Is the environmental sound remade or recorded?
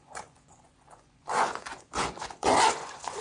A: remade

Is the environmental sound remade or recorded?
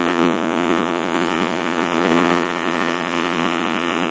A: remade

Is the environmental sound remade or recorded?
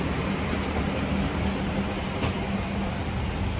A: recorded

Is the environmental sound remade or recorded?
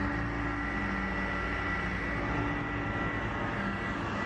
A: recorded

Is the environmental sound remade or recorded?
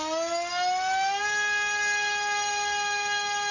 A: recorded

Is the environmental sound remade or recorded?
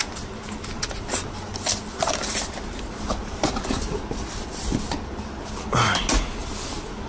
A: recorded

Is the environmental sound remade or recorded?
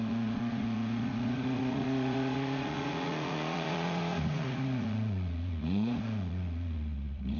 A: remade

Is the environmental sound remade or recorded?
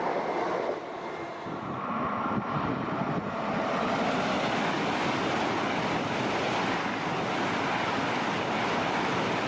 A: recorded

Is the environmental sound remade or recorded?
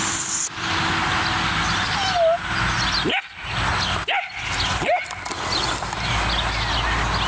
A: recorded